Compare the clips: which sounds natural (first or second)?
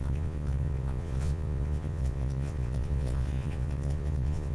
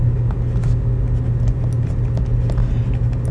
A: second